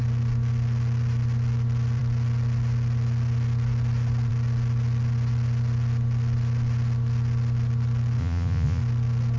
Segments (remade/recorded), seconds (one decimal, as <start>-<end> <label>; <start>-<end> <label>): 0.0-8.2 recorded; 8.2-8.8 remade; 8.8-9.4 recorded